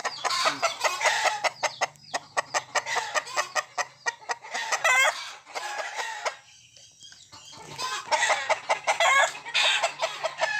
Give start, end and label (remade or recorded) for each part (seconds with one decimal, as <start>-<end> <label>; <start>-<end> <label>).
0.0-2.5 remade; 2.5-10.6 recorded